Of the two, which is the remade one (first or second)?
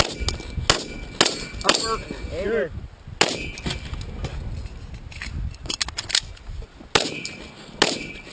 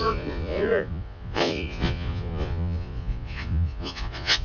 second